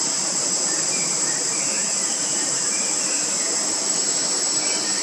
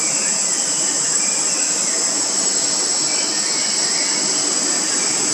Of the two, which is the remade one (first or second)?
first